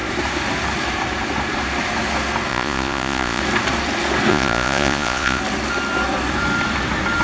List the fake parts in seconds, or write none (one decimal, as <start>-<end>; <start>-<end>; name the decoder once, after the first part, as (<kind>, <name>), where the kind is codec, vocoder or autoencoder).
2.5-3.4 (vocoder, Vocos); 4.3-5.4